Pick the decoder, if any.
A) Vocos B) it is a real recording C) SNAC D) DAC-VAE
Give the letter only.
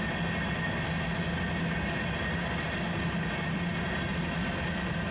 B